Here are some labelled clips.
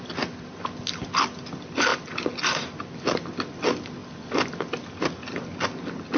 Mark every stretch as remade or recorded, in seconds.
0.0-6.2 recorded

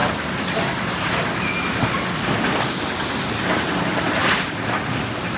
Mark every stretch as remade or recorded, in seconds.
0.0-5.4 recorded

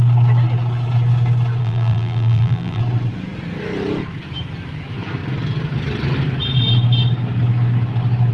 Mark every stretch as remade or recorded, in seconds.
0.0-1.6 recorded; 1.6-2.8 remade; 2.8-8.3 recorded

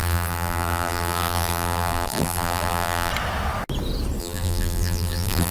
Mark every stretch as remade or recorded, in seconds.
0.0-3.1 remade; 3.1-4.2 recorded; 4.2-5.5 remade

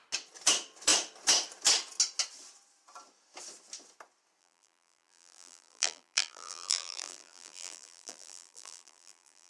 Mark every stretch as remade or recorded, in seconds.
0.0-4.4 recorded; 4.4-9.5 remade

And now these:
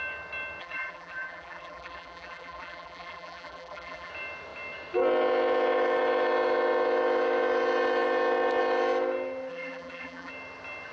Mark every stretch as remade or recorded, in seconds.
0.0-0.6 recorded; 0.6-4.1 remade; 4.1-9.5 recorded; 9.5-10.3 remade; 10.3-10.9 recorded